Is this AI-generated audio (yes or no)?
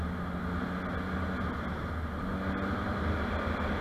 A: no